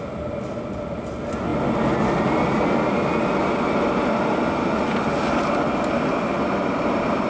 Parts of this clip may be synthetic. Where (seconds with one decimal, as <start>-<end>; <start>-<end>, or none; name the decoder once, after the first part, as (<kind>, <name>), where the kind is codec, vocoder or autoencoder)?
none